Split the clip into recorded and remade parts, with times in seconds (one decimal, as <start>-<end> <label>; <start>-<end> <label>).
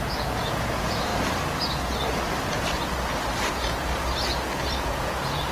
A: 0.0-1.1 remade; 1.1-3.5 recorded; 3.5-3.9 remade; 3.9-4.8 recorded; 4.8-5.5 remade